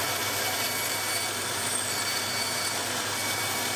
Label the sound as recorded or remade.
recorded